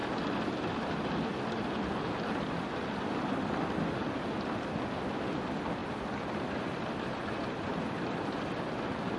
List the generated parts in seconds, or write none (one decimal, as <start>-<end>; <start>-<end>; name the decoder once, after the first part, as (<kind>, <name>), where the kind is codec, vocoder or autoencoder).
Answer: 5.8-8.7 (vocoder, BigVGAN v2)